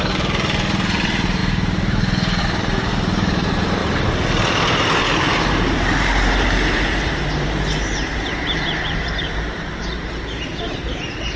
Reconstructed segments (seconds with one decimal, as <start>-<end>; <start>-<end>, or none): 0.0-1.4; 2.4-3.8; 5.5-11.4